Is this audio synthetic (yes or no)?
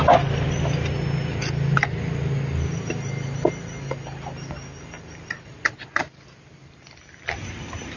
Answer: no